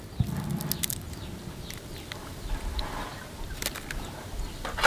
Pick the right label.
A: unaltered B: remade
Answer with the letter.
A